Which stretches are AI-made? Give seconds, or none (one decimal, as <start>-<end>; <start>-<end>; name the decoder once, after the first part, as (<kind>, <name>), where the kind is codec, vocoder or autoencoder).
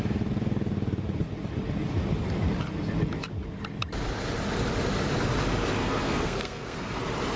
5.8-7.0 (codec, SNAC)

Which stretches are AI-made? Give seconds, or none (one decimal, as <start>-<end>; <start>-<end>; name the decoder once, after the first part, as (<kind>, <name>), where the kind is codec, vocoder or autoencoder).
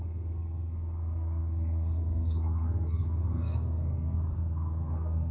0.0-5.3 (codec, SNAC)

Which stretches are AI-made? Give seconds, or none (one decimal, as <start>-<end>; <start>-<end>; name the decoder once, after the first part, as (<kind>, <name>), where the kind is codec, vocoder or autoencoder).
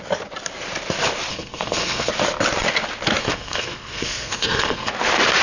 1.3-2.1 (codec, SNAC); 3.2-4.9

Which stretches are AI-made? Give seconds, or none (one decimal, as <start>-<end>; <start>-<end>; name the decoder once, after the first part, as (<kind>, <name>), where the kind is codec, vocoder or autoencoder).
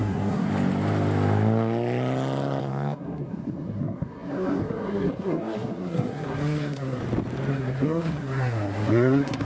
0.0-0.5 (codec, SNAC); 2.6-7.0; 7.5-9.4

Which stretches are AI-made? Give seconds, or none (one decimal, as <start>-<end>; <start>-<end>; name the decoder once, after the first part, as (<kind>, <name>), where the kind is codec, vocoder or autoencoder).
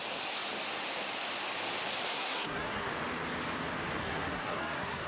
2.1-2.9 (codec, SNAC); 4.0-5.1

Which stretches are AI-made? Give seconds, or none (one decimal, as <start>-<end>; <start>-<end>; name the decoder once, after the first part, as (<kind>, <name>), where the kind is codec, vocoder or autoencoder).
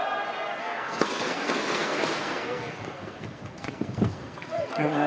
0.6-5.1 (codec, SNAC)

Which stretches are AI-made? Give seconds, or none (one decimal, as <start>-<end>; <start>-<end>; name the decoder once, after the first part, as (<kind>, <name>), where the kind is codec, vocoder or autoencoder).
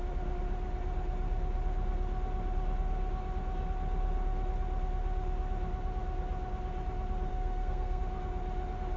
7.3-8.0 (codec, SNAC)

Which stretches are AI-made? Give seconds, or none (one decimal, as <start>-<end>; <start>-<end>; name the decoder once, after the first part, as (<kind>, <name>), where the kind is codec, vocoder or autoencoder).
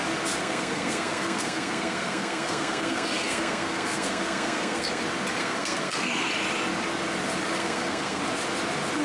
0.4-5.0 (codec, SNAC); 5.4-6.3; 7.6-8.2